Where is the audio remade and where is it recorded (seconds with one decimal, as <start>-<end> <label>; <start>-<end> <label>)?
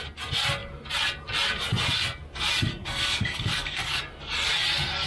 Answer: 0.0-2.7 recorded; 2.7-4.0 remade; 4.0-5.1 recorded